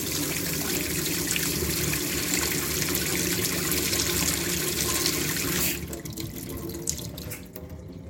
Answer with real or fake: real